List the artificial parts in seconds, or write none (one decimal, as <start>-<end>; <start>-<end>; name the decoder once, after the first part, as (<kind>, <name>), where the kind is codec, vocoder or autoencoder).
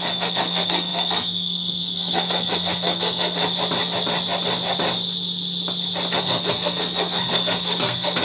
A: 0.0-3.4 (codec, SNAC); 6.2-8.2